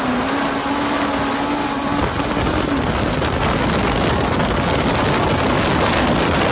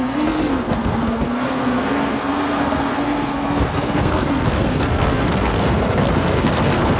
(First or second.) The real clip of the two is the first